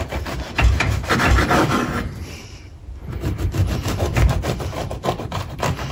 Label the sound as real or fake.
fake